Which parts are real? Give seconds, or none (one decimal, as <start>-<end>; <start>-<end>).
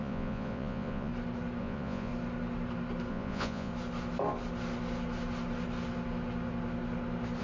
1.1-1.6; 2.1-3.1; 3.7-7.4